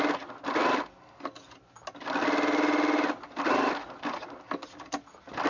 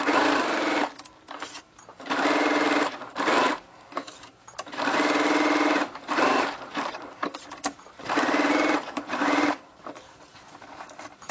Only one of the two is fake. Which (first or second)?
second